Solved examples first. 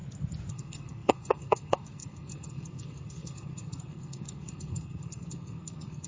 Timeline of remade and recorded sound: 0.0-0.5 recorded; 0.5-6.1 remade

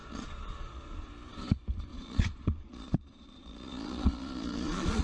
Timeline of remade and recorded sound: 0.0-1.1 remade; 1.1-1.9 recorded; 1.9-5.0 remade

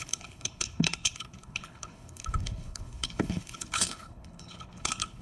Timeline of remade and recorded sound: 0.0-5.2 remade

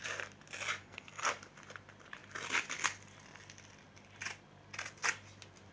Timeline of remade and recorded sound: 0.0-0.8 recorded; 0.8-1.3 remade; 1.3-5.7 recorded

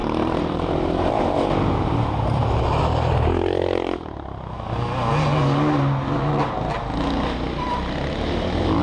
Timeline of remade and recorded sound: 0.0-2.8 remade; 2.8-8.8 recorded

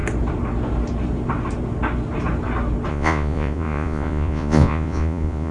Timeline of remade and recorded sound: 0.0-2.9 recorded; 2.9-5.5 remade

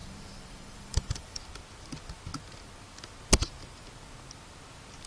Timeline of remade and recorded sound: 0.0-1.4 remade; 1.4-5.1 recorded

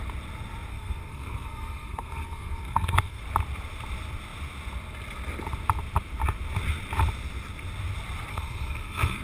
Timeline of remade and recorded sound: 0.0-0.7 recorded; 0.7-3.2 remade; 3.2-8.3 recorded; 8.3-9.2 remade